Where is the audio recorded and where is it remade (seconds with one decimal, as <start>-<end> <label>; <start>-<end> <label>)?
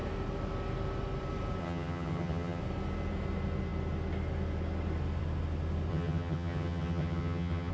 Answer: 0.0-1.6 recorded; 1.6-2.6 remade; 2.6-5.9 recorded; 5.9-7.7 remade